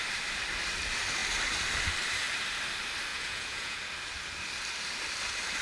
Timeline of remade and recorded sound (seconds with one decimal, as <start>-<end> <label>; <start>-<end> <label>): 0.0-3.1 recorded; 3.1-3.8 remade; 3.8-5.6 recorded